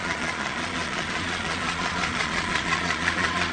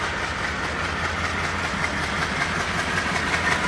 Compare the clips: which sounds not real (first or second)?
first